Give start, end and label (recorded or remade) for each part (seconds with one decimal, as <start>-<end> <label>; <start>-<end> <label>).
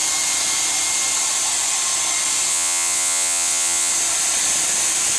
0.0-2.5 recorded; 2.5-3.9 remade; 3.9-5.2 recorded